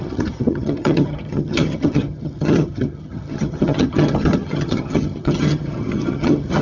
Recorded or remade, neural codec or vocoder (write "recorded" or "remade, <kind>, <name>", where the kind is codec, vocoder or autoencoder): remade, vocoder, HiFi-GAN